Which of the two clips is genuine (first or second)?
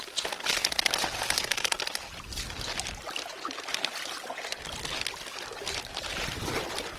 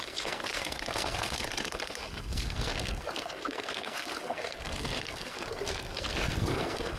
first